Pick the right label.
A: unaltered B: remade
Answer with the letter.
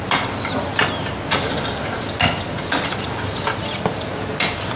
A